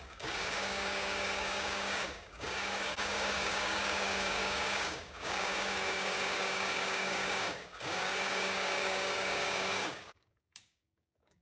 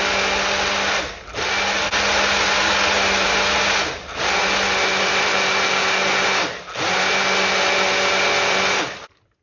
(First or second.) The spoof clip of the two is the first